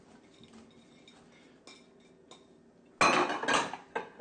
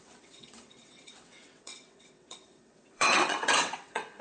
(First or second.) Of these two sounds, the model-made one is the second